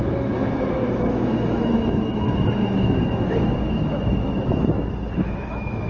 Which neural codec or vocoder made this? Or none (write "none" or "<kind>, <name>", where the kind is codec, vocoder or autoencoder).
autoencoder, DAC-VAE